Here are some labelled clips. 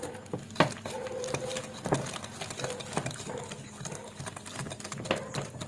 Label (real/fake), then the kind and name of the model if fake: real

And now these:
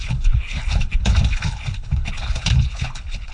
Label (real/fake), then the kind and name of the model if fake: fake, codec, HILCodec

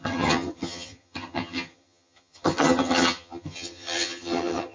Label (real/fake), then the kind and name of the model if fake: fake, vocoder, HiFi-GAN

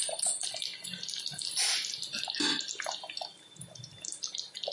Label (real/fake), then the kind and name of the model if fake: real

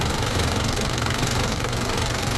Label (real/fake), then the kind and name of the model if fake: fake, codec, DAC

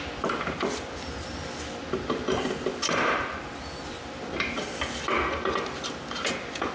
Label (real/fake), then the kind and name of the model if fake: real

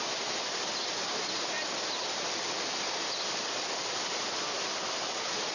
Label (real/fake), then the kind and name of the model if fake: real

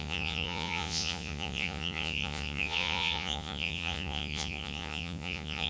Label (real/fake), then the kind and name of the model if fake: fake, vocoder, Vocos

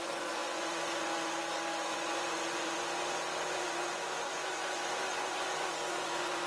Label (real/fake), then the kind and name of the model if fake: fake, vocoder, Vocos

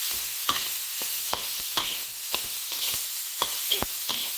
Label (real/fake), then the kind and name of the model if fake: fake, autoencoder, DAC-VAE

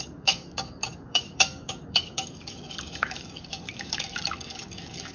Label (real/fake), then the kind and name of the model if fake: fake, codec, DAC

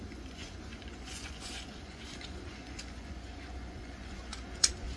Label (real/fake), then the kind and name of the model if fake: fake, vocoder, Vocos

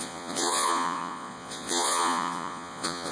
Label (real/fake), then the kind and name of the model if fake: fake, vocoder, Vocos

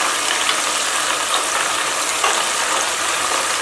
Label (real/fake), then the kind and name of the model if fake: real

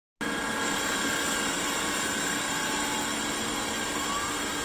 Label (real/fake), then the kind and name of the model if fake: real